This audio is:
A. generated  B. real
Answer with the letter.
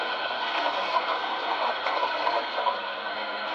A